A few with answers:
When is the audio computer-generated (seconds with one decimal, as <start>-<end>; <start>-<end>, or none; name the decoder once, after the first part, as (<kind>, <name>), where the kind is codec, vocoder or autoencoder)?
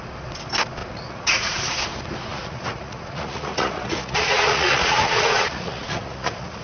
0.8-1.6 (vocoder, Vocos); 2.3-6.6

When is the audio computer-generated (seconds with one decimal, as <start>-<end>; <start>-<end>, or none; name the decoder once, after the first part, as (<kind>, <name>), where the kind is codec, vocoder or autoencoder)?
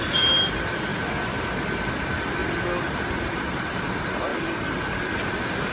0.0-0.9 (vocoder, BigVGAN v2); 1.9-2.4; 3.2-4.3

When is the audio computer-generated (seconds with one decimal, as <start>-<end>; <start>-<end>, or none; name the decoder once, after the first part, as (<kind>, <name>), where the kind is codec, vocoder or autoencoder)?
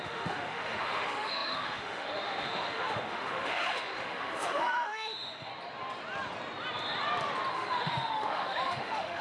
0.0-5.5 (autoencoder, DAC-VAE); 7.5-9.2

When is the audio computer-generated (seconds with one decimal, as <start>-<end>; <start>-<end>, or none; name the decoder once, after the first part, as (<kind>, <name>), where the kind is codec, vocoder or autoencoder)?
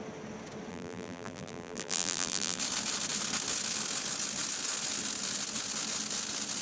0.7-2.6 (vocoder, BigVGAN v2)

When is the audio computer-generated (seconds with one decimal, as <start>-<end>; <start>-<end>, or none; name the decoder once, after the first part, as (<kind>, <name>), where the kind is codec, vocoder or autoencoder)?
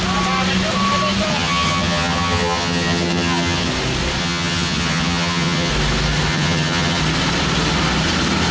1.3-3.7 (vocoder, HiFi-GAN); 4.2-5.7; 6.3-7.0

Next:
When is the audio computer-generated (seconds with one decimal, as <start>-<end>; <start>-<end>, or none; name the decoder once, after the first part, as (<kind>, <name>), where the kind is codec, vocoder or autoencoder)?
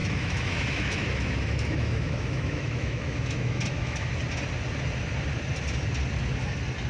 0.0-4.1 (autoencoder, DAC-VAE)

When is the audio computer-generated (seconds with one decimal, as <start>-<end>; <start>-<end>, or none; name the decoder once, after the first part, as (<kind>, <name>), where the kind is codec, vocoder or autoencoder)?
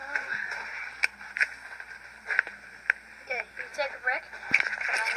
0.9-3.7 (vocoder, BigVGAN v2); 4.2-5.2